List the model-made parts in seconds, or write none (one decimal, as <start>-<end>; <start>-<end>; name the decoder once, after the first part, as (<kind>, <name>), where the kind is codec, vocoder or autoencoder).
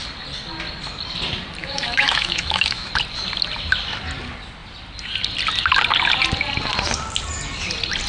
1.6-2.9 (autoencoder, DAC-VAE)